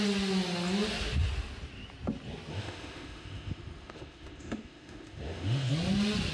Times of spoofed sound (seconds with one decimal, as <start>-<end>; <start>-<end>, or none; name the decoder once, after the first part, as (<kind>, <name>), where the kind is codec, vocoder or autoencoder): 2.5-5.7 (autoencoder, DAC-VAE)